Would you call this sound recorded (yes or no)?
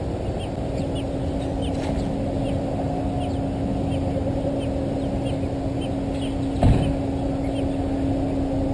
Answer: yes